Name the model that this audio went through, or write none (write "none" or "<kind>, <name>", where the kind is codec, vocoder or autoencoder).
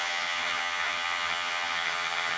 vocoder, HiFi-GAN